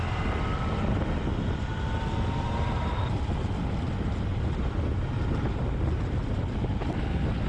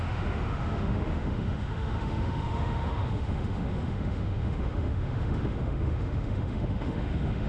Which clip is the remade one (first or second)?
second